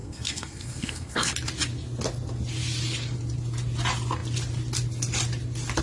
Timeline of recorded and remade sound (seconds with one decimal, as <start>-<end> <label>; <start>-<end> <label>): 0.0-1.3 remade; 1.3-5.8 recorded